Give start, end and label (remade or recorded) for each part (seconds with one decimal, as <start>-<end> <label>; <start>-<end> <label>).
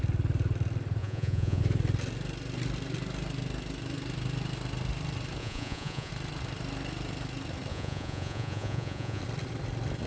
0.0-1.0 recorded; 1.0-1.6 remade; 1.6-5.4 recorded; 5.4-6.1 remade; 6.1-7.7 recorded; 7.7-9.2 remade; 9.2-10.1 recorded